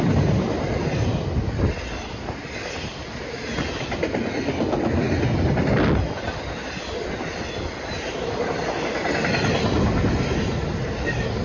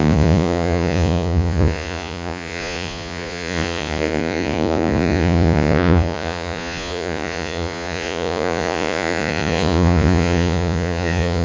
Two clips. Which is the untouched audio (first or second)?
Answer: first